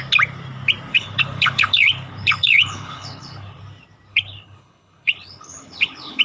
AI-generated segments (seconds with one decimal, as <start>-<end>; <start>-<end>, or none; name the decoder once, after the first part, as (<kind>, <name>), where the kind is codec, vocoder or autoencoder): 0.9-3.6 (codec, HILCodec); 4.1-6.2